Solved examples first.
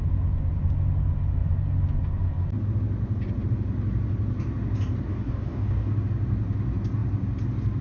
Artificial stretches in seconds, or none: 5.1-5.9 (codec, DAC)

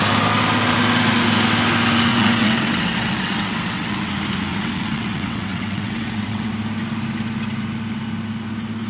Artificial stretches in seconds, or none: 2.1-4.1 (vocoder, WaveNeXt); 4.5-6.5

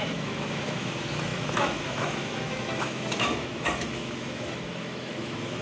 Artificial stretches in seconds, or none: 0.0-5.6 (autoencoder, DAC-VAE)

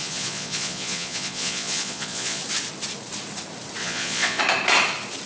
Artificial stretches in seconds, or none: 0.0-2.4 (vocoder, Vocos); 3.8-4.4

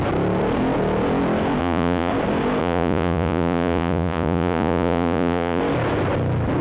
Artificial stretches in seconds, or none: 1.6-2.1 (vocoder, Vocos); 2.6-5.6

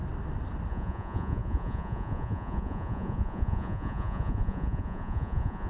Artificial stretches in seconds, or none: 0.7-5.7 (vocoder, Vocos)

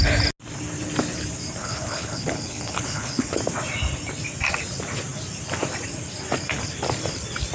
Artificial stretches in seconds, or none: 1.6-3.4 (codec, HILCodec)